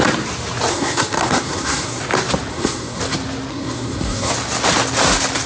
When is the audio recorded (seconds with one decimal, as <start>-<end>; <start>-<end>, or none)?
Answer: 0.0-0.7; 2.0-2.5; 3.0-3.5; 4.3-5.5